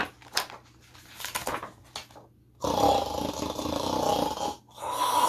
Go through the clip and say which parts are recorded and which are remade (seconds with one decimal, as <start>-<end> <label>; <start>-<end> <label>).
0.0-5.3 recorded